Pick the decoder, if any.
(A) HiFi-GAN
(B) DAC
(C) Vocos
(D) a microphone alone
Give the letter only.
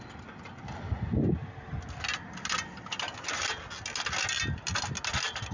D